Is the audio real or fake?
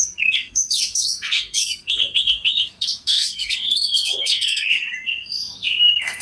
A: fake